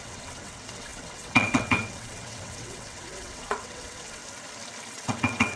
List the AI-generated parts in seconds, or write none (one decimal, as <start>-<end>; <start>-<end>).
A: 0.0-4.2; 4.9-5.6